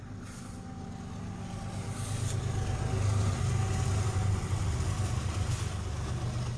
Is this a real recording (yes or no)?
yes